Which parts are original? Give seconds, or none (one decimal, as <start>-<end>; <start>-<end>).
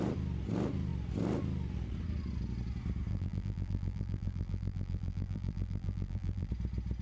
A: 0.0-3.1; 6.5-7.0